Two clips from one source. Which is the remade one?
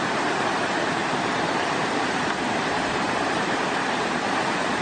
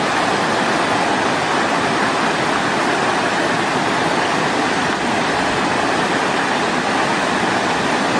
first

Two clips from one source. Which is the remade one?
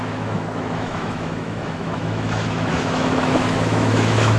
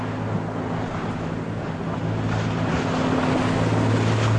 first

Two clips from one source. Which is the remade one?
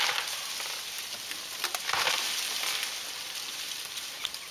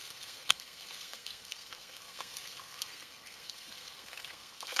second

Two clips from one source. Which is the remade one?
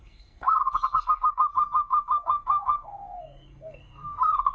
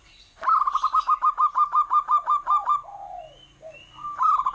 first